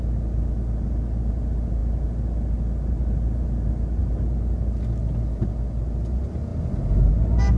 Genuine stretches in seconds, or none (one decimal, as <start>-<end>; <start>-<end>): 0.0-7.6